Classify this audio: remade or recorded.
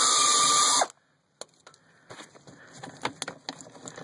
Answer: recorded